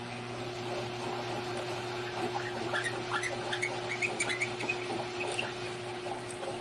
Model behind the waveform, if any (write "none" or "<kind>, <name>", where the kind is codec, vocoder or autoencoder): none